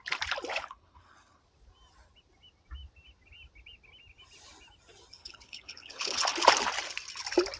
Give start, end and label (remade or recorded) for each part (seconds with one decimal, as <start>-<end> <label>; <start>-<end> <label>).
0.0-0.5 recorded; 0.5-1.4 remade; 1.4-5.2 recorded; 5.2-6.2 remade; 6.2-7.6 recorded